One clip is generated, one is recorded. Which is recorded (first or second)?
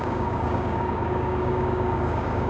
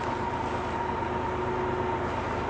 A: second